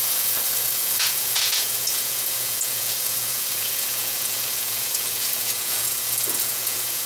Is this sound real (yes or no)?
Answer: no